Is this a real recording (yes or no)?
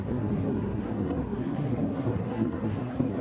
no